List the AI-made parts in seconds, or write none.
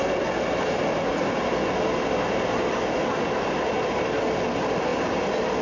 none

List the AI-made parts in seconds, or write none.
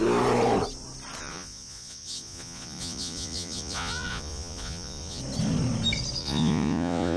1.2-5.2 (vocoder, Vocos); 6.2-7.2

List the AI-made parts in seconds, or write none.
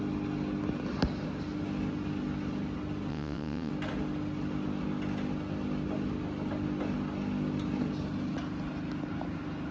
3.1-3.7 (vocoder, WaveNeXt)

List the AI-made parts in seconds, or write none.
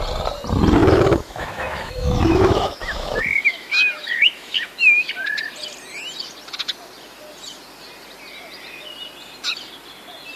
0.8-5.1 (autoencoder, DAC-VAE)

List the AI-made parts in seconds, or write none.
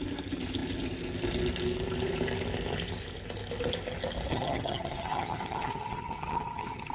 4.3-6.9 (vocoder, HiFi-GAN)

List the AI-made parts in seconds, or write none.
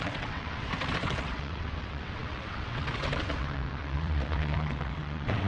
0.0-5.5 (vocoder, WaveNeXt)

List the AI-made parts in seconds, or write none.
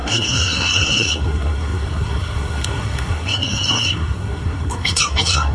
0.0-5.5 (codec, SNAC)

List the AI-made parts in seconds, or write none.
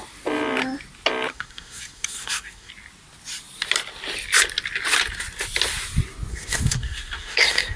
1.3-2.7 (codec, SNAC); 6.3-7.8